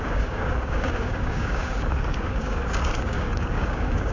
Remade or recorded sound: remade